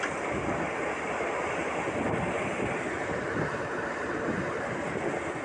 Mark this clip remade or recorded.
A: recorded